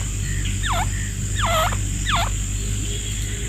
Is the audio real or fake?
real